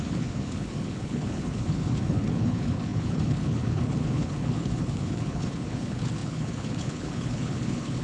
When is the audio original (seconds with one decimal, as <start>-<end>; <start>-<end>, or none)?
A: none